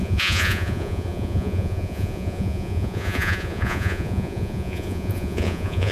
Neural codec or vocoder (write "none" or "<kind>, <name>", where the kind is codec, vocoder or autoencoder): vocoder, Vocos